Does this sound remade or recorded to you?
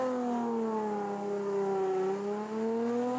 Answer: recorded